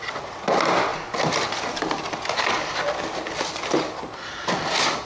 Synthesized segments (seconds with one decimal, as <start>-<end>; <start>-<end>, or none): 0.9-4.0